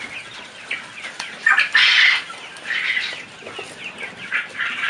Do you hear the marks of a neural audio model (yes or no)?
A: no